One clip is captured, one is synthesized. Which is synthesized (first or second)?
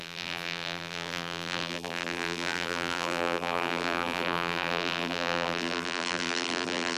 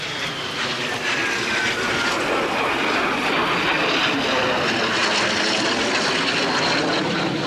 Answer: first